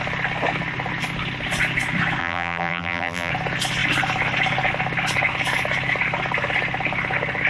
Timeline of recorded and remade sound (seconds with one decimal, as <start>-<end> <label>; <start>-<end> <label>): 0.0-2.2 recorded; 2.2-3.3 remade; 3.3-7.5 recorded